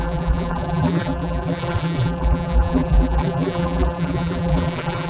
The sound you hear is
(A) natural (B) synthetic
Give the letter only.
B